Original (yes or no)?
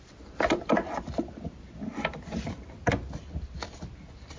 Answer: yes